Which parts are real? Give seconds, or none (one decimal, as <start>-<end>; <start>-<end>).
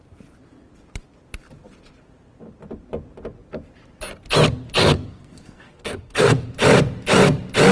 0.0-4.8; 6.5-7.7